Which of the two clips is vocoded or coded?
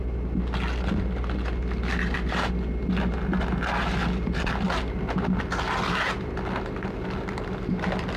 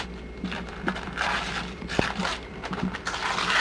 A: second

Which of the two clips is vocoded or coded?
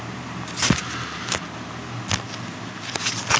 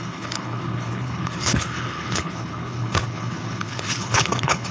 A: second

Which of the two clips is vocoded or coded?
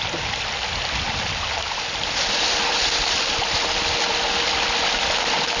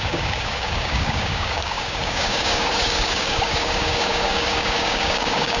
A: second